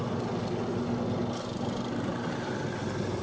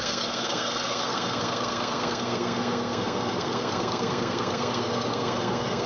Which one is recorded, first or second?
first